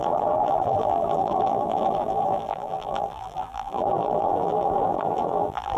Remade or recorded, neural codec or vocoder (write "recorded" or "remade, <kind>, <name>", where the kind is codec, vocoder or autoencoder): remade, vocoder, BigVGAN v2